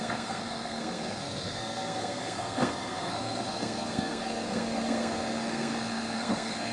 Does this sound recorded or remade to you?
remade